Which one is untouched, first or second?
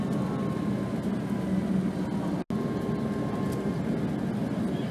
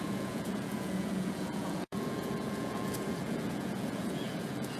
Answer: first